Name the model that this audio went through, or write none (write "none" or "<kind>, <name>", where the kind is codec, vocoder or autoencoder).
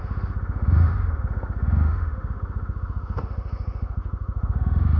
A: autoencoder, DAC-VAE